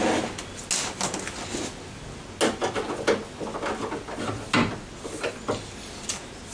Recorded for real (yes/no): yes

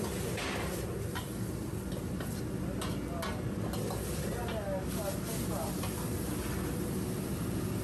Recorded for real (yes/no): yes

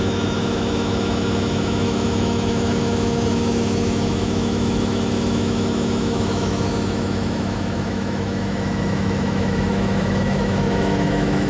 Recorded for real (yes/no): no